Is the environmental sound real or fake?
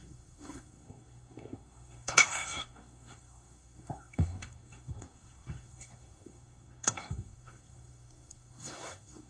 fake